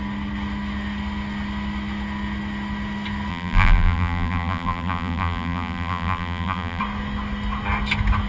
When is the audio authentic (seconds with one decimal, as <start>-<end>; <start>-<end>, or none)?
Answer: 0.0-3.3; 6.8-8.3